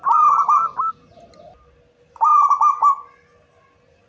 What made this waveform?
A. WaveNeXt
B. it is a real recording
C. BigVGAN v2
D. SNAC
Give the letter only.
B